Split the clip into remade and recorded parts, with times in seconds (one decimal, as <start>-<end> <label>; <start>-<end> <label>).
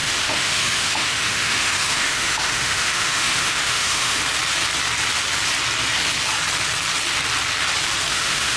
0.0-4.2 remade; 4.2-8.1 recorded; 8.1-8.6 remade